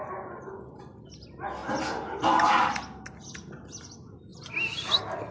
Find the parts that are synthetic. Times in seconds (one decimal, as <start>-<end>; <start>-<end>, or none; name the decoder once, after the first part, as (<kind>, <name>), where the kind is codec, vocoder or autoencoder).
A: 1.6-2.7 (vocoder, BigVGAN v2)